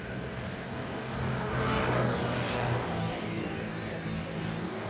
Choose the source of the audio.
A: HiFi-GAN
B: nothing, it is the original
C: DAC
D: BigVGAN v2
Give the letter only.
C